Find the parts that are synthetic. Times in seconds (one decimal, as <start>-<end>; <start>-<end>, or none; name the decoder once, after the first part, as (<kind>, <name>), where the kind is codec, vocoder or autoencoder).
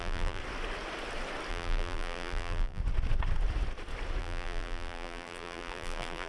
0.0-0.4 (vocoder, BigVGAN v2); 1.5-2.8; 4.2-6.3